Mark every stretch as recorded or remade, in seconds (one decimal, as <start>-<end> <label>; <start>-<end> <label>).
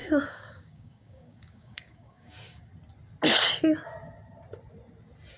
0.0-2.7 remade; 2.7-5.4 recorded